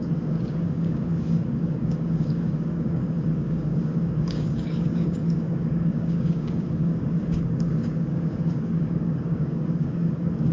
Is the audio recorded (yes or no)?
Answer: no